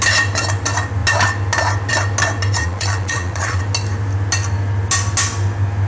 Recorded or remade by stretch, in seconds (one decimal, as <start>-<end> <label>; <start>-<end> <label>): 0.0-2.6 recorded; 2.6-3.6 remade; 3.6-5.9 recorded